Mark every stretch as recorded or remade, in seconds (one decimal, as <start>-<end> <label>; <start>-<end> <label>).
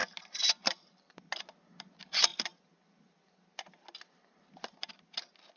0.0-5.6 recorded